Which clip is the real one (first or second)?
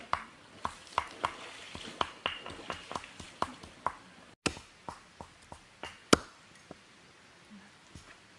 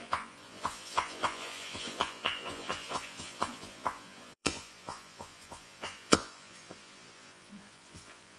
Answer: first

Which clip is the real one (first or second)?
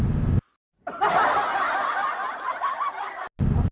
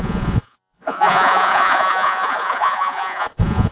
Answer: first